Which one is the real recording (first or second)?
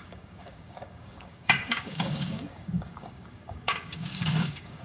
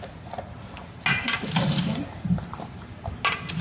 second